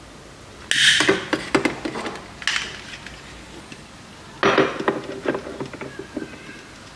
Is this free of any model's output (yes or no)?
yes